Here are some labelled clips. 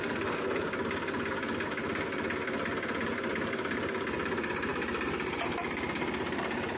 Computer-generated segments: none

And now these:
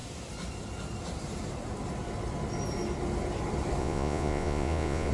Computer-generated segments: 3.8-5.1 (vocoder, Vocos)

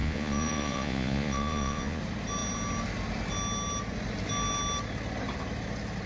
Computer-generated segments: 0.0-2.0 (vocoder, Vocos)